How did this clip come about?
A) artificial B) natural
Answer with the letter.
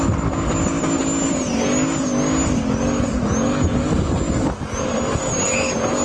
B